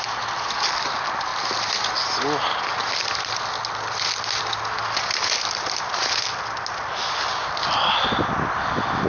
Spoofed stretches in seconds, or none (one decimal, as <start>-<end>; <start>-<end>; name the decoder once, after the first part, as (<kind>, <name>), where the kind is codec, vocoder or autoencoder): none